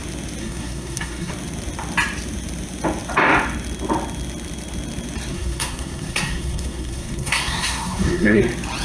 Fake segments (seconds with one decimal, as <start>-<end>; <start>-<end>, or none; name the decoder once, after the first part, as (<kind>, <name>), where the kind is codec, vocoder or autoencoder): 0.4-1.3 (codec, SNAC); 5.3-8.4